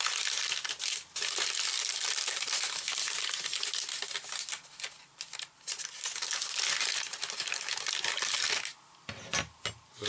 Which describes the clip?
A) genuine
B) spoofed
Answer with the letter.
A